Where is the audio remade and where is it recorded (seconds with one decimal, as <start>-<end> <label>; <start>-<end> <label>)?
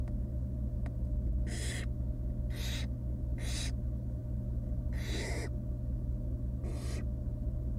0.0-7.8 recorded